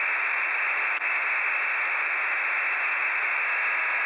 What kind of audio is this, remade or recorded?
recorded